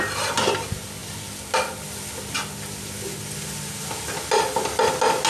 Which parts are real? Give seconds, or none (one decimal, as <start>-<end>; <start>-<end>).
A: 0.0-5.3